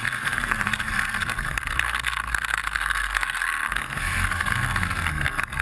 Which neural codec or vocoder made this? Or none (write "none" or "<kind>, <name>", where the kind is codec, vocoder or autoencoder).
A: codec, SNAC